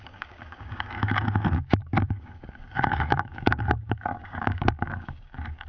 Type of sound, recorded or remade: remade